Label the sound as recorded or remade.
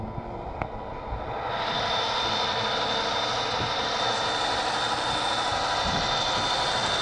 recorded